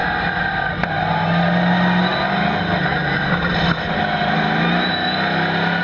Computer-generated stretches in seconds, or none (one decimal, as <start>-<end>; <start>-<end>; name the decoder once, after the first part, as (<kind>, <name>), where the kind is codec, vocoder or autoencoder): none

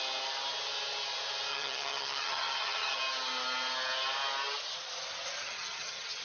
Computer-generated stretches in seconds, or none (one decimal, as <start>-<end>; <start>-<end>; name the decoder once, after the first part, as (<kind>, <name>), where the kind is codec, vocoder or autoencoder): 1.5-3.0 (vocoder, HiFi-GAN); 5.4-6.2

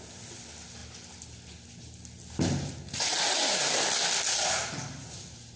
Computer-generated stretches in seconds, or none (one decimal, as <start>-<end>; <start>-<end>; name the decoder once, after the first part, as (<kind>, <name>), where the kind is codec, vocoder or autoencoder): none

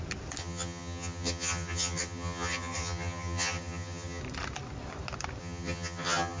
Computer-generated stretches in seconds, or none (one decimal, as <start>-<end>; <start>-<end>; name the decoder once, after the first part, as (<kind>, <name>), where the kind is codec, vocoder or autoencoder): 0.4-4.2 (vocoder, HiFi-GAN); 5.4-6.4

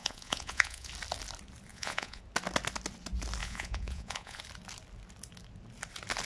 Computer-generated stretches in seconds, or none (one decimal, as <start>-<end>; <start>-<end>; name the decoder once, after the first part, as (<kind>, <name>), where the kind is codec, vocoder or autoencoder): 0.0-0.9 (vocoder, Vocos); 1.7-2.2; 3.4-4.4

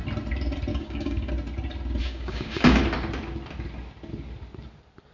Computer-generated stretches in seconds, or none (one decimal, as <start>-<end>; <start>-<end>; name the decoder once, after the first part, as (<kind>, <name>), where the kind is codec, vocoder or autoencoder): 0.7-1.3 (codec, DAC); 2.0-2.8

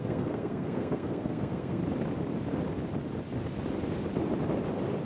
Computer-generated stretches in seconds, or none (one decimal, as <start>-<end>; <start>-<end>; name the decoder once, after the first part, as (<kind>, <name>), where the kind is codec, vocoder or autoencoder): 0.0-1.8 (codec, SNAC)

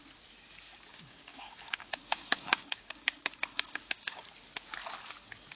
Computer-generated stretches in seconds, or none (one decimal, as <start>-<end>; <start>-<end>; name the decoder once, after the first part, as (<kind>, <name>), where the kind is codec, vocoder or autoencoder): 0.9-4.2 (codec, DAC)